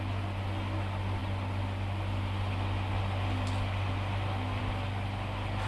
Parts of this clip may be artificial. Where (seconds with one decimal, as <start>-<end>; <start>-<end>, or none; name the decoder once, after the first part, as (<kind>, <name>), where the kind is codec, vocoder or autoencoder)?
none